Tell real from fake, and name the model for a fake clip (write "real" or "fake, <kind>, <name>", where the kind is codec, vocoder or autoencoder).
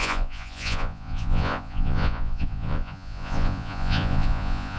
fake, vocoder, Vocos